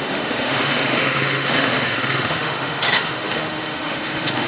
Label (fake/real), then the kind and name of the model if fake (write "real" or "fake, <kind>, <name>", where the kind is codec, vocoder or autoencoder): fake, autoencoder, DAC-VAE